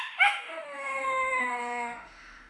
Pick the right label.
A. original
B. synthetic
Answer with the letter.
B